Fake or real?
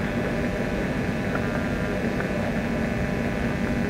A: real